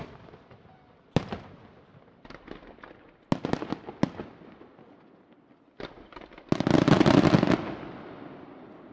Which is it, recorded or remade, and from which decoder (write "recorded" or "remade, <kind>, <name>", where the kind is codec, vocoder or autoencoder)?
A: recorded